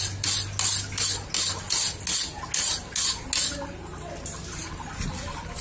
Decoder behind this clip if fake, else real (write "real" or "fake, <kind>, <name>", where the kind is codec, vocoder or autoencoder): real